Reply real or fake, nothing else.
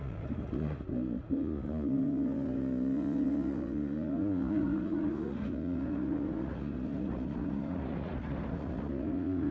fake